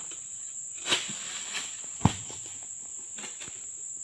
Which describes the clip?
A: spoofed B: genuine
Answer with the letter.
B